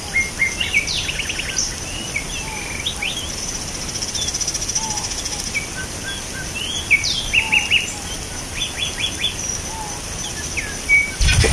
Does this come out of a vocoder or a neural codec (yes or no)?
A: no